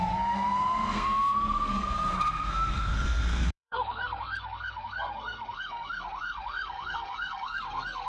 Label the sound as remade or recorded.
remade